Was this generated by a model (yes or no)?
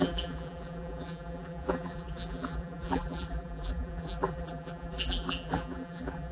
yes